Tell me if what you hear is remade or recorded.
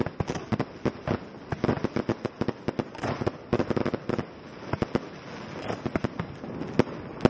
recorded